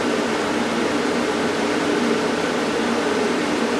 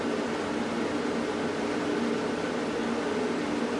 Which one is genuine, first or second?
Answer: second